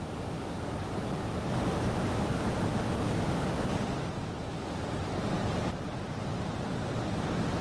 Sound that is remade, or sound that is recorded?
recorded